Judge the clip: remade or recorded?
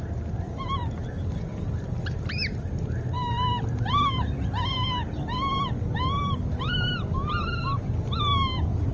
recorded